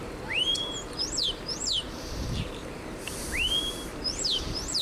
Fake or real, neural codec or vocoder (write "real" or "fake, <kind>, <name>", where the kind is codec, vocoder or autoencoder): fake, vocoder, BigVGAN v2